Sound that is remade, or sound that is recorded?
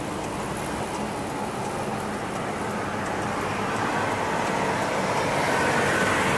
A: recorded